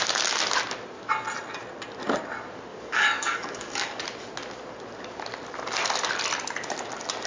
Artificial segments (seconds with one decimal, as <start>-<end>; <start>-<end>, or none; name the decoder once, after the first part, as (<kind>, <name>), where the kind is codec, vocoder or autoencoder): 2.7-4.0 (codec, DAC)